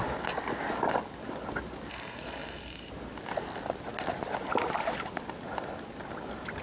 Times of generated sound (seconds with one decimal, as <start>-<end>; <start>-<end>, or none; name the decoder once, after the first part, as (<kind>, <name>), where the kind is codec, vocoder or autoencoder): 1.9-2.9 (codec, SNAC)